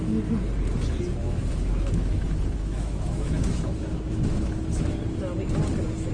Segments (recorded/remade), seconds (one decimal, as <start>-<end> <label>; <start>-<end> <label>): 0.0-1.2 recorded; 1.2-4.9 remade; 4.9-6.1 recorded